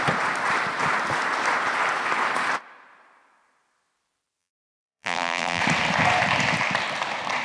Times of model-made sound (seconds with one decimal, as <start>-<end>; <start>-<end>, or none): 4.4-5.6